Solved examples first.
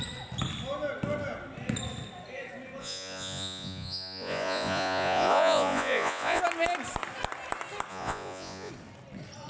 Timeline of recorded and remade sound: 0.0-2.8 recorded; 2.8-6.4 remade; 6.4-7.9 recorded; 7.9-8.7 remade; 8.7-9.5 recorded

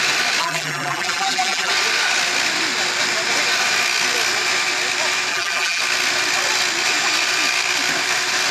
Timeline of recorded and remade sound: 0.0-0.4 recorded; 0.4-1.7 remade; 1.7-5.3 recorded; 5.3-5.8 remade; 5.8-8.5 recorded

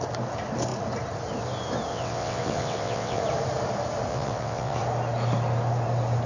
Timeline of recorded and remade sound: 0.0-1.9 recorded; 1.9-3.2 remade; 3.2-4.1 recorded; 4.1-4.8 remade; 4.8-6.3 recorded

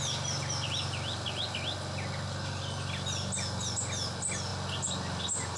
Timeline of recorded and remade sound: 0.0-5.6 recorded

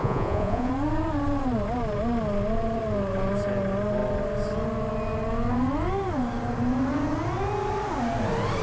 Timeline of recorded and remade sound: 0.0-0.7 remade; 0.7-8.6 recorded